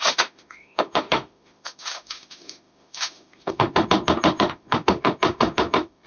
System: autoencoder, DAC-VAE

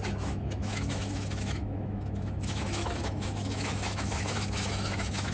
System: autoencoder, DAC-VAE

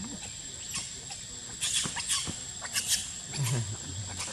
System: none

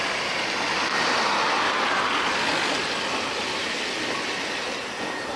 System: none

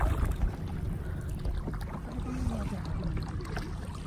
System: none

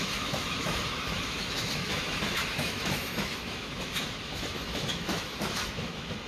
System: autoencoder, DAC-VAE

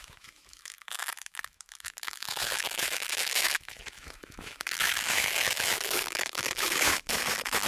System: autoencoder, DAC-VAE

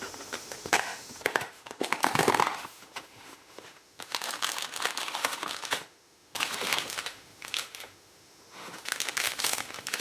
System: autoencoder, DAC-VAE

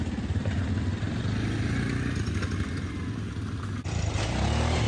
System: none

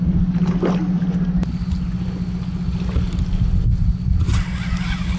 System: none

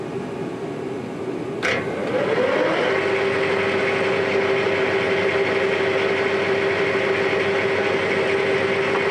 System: none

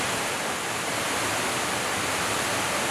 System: none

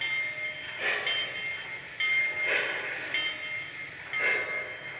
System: none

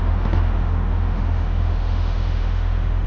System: autoencoder, DAC-VAE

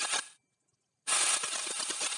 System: none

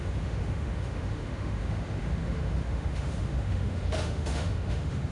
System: autoencoder, DAC-VAE